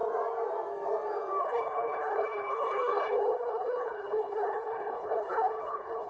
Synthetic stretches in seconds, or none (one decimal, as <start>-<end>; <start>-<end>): 1.4-6.1